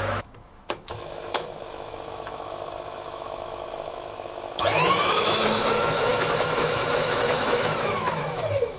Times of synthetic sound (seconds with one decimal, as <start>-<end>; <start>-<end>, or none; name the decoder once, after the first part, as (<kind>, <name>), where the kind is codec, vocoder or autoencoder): 0.0-8.8 (autoencoder, DAC-VAE)

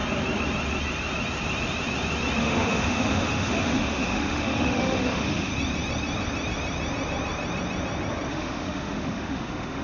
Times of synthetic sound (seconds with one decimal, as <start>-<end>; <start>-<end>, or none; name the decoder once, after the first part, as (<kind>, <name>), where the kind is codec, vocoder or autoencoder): 2.4-5.5 (autoencoder, DAC-VAE); 8.3-9.8